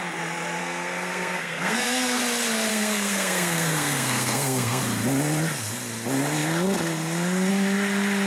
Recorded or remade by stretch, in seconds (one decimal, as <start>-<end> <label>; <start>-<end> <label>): 0.0-0.6 recorded; 0.6-2.2 remade; 2.2-2.7 recorded; 2.7-4.8 remade; 4.8-8.3 recorded